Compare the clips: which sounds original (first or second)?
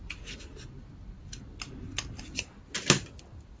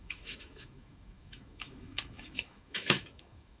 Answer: first